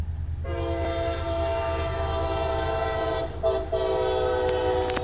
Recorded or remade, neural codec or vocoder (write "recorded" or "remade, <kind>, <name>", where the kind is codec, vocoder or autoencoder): recorded